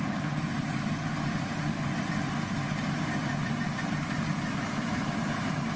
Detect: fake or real real